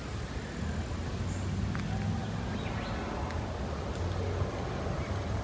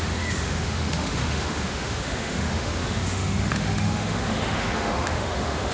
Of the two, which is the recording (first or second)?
first